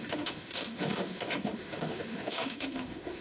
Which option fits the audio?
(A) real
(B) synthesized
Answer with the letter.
B